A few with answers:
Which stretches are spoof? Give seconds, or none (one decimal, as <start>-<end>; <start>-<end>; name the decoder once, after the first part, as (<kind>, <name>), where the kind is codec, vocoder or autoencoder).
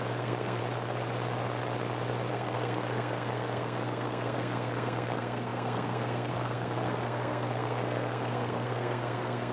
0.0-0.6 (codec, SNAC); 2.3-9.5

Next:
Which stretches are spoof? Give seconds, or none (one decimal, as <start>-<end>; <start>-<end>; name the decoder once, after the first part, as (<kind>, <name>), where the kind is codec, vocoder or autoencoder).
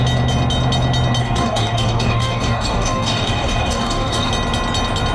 1.2-4.3 (codec, DAC)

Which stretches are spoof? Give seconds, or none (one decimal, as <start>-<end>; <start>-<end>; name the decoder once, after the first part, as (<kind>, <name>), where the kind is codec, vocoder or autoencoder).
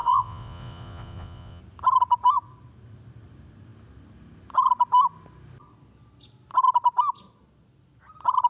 0.0-1.6 (vocoder, Vocos)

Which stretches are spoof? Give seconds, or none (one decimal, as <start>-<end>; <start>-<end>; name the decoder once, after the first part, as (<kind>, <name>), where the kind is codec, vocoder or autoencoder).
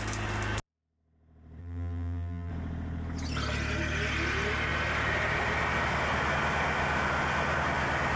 1.6-2.5 (vocoder, BigVGAN v2)